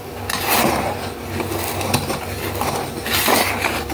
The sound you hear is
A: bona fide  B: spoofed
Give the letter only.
A